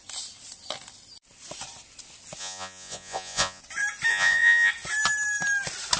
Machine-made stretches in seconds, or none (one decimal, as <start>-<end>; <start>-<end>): 2.4-3.6; 4.1-4.7